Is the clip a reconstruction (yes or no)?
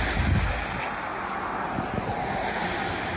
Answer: no